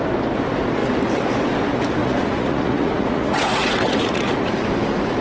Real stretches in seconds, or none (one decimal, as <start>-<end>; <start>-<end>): 0.0-2.0; 4.6-5.2